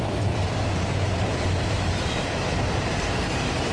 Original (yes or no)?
no